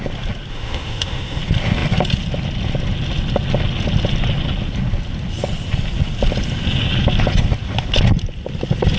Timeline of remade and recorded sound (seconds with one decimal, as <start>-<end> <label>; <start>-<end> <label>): 0.0-0.5 recorded; 0.5-1.4 remade; 1.4-9.0 recorded